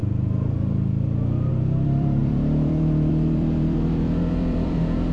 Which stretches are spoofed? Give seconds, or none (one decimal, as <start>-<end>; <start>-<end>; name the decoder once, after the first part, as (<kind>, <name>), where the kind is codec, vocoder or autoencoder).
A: 1.5-5.1 (vocoder, BigVGAN v2)